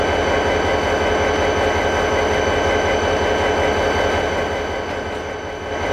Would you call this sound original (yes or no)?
yes